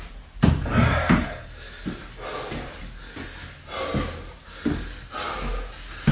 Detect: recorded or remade recorded